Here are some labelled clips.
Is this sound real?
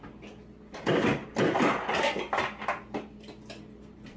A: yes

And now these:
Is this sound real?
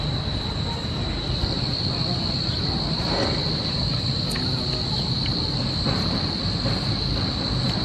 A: yes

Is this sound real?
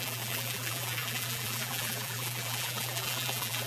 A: no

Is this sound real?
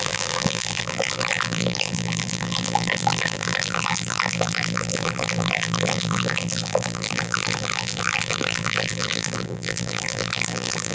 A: no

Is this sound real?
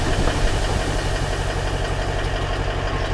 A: yes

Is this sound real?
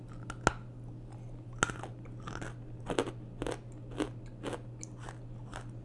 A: yes